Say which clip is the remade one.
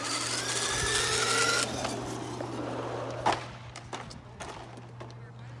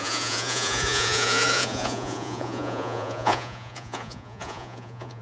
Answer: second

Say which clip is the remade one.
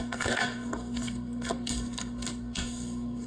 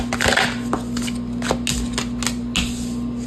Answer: first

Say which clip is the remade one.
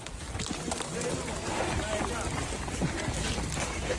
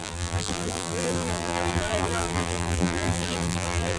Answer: second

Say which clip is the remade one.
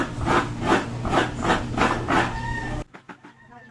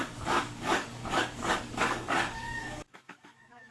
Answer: second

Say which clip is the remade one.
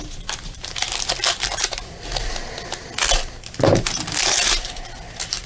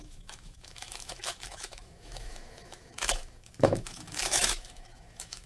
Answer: second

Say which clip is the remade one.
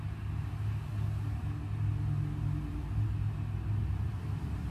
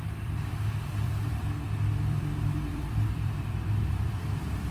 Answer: second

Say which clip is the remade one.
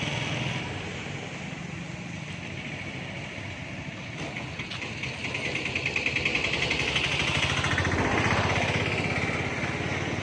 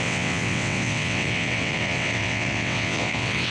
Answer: second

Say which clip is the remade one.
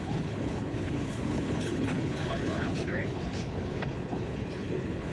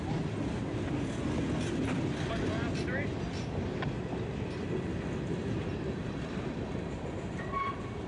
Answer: first